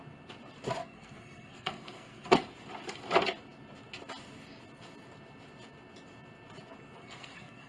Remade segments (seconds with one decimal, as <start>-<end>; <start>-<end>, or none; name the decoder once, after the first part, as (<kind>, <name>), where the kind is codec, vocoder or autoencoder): 0.8-2.4 (codec, SNAC); 7.0-7.7